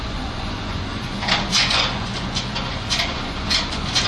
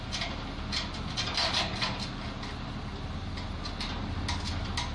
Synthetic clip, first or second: first